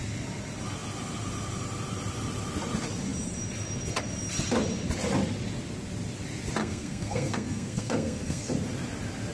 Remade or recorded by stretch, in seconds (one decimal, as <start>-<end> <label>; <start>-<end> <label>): 0.0-6.6 recorded; 6.6-8.5 remade; 8.5-9.3 recorded